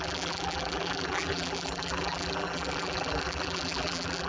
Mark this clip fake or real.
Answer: fake